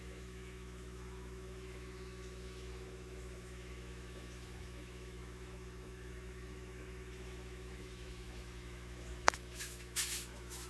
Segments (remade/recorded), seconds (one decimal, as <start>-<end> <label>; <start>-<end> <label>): 0.0-10.7 remade